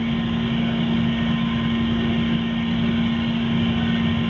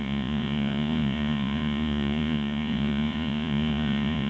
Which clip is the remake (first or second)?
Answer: second